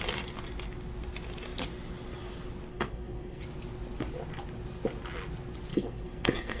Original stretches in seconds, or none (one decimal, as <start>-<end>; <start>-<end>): 0.0-2.7; 3.4-5.7